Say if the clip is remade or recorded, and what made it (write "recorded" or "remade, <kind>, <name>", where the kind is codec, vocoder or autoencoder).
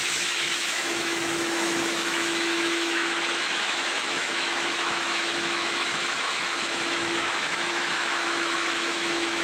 remade, autoencoder, DAC-VAE